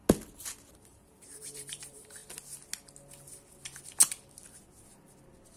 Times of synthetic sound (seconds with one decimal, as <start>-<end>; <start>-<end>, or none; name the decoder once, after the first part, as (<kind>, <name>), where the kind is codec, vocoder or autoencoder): 0.7-2.2 (vocoder, BigVGAN v2)